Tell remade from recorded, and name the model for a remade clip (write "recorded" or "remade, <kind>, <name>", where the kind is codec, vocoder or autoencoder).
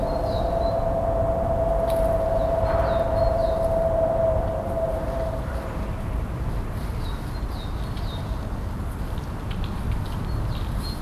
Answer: recorded